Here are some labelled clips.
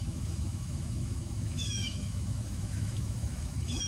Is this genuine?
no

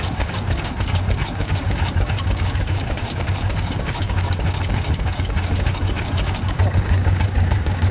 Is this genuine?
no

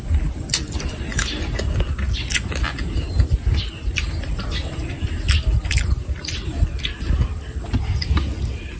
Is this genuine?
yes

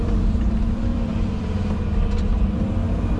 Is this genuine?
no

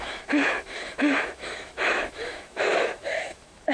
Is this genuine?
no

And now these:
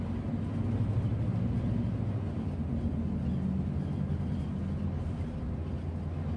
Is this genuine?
yes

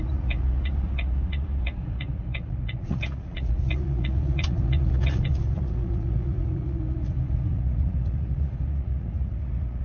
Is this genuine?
no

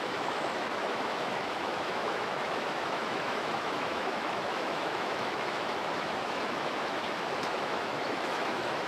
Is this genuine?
no